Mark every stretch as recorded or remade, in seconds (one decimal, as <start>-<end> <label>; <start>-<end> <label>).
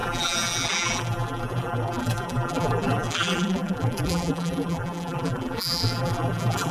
0.0-6.7 remade